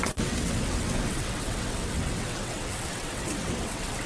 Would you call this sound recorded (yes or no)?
no